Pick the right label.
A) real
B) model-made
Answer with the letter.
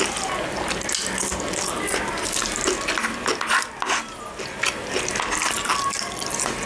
A